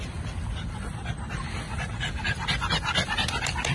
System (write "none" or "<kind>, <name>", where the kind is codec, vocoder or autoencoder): none